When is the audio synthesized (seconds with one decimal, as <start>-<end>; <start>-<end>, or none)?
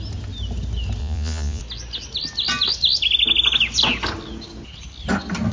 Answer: 1.0-1.6